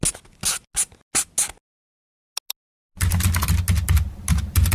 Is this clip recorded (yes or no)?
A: yes